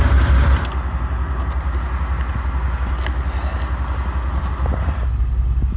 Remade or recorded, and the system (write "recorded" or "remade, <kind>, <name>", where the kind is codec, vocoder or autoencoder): recorded